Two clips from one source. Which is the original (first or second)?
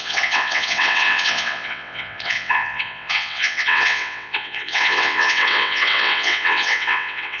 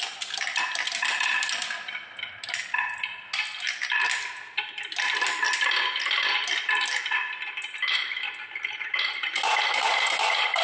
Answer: second